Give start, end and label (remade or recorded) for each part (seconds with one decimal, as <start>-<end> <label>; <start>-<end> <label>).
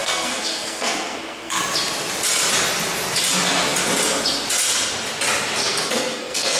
0.0-1.6 remade; 1.6-5.6 recorded; 5.6-6.6 remade